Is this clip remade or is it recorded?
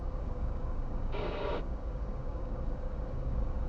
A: remade